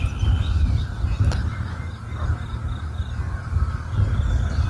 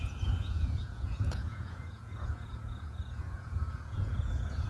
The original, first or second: first